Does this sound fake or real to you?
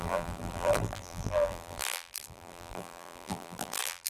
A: fake